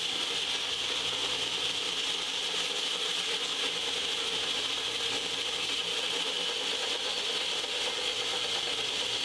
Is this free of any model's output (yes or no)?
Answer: yes